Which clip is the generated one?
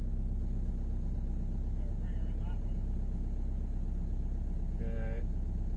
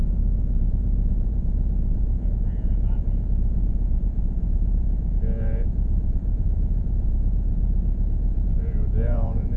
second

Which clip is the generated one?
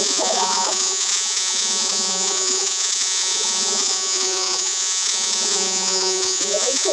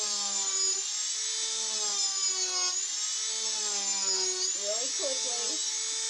first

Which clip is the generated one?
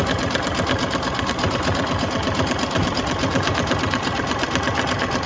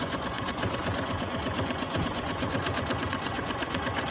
second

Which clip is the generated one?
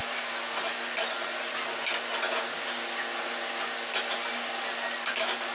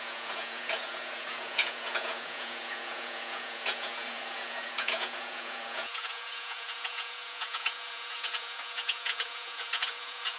second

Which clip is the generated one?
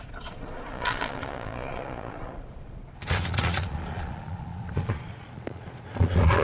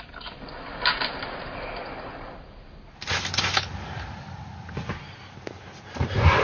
first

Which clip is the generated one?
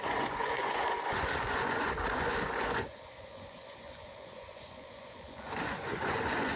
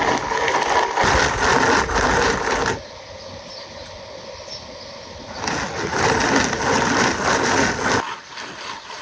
first